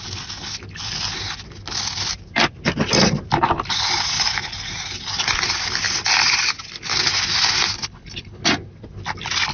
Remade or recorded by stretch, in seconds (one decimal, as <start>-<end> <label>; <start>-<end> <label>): 0.0-7.7 recorded; 7.7-8.4 remade; 8.4-9.5 recorded